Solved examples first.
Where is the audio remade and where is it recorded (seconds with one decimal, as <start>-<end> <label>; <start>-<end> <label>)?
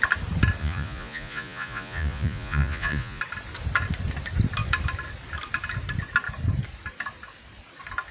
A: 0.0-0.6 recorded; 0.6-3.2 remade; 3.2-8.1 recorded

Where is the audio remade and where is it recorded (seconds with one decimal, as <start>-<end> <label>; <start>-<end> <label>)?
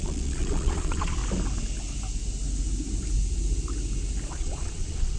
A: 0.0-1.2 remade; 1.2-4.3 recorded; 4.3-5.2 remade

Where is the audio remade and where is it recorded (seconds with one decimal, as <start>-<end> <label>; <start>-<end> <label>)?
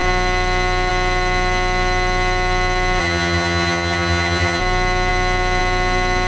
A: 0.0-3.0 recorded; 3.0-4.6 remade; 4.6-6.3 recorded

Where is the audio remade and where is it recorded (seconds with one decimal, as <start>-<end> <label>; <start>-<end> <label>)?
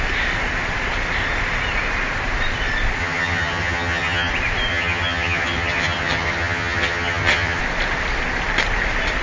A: 0.0-3.0 recorded; 3.0-4.3 remade; 4.3-4.7 recorded; 4.7-7.6 remade; 7.6-9.2 recorded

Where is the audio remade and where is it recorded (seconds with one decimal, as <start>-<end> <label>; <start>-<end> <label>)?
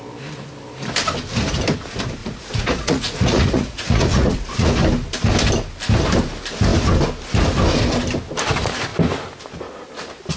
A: 0.0-2.2 recorded; 2.2-4.7 remade; 4.7-10.4 recorded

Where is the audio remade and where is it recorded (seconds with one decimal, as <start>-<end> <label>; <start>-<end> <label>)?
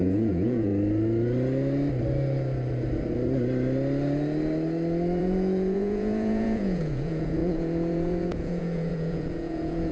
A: 0.0-0.7 remade; 0.7-5.2 recorded; 5.2-9.9 remade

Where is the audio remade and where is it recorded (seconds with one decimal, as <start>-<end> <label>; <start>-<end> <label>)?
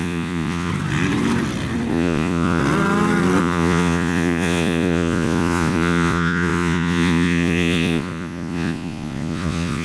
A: 0.0-0.7 remade; 0.7-1.9 recorded; 1.9-2.6 remade; 2.6-3.4 recorded; 3.4-9.8 remade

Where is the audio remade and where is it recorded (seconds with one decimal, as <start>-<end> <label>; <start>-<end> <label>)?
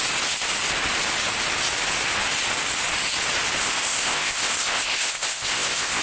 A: 0.0-3.6 recorded; 3.6-6.0 remade